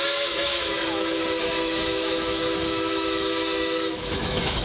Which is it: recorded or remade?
remade